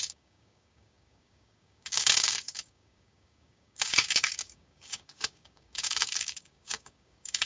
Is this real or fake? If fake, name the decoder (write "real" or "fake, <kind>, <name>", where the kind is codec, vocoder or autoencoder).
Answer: fake, codec, DAC